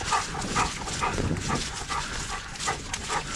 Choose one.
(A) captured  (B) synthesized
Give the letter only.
B